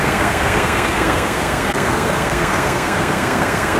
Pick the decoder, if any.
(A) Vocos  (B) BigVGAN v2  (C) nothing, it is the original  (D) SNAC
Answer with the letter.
D